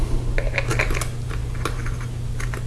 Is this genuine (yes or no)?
yes